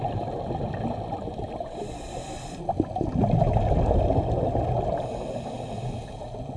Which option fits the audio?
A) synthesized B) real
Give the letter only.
B